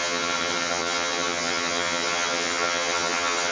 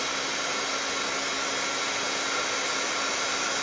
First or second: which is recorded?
second